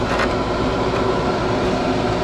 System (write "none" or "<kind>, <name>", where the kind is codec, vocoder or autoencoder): none